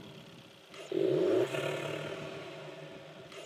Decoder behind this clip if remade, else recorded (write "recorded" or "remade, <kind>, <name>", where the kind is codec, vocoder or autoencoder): recorded